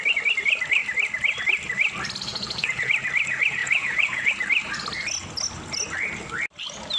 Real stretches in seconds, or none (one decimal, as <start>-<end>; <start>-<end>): 0.0-2.3; 2.9-3.6; 4.3-7.0

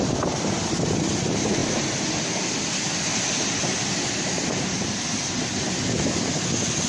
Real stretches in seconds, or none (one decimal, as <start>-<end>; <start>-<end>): 0.0-6.9